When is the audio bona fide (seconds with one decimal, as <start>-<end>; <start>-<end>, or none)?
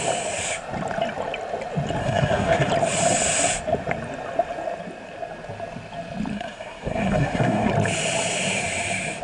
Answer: 0.0-2.0; 2.7-6.3; 7.7-9.2